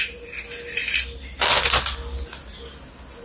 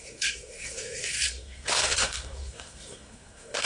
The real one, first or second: first